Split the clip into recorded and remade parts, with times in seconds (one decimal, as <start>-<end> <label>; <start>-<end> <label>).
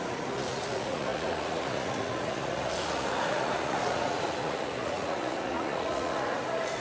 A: 0.0-6.8 remade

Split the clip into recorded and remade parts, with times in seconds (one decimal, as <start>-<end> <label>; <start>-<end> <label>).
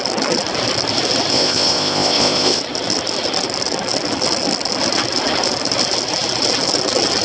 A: 0.0-1.3 recorded; 1.3-2.6 remade; 2.6-7.2 recorded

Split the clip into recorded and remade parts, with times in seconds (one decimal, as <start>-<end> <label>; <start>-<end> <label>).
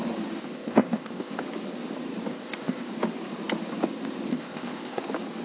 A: 0.0-0.4 recorded; 0.4-1.3 remade; 1.3-2.3 recorded; 2.3-2.9 remade; 2.9-4.3 recorded; 4.3-5.0 remade; 5.0-5.4 recorded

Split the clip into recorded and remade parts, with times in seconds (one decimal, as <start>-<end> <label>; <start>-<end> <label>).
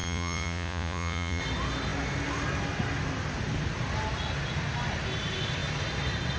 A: 0.0-1.4 remade; 1.4-6.4 recorded